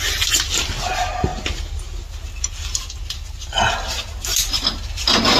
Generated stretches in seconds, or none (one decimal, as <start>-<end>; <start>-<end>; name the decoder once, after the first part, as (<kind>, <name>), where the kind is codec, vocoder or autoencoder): none